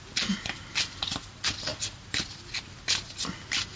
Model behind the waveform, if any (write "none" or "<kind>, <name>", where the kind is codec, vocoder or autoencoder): none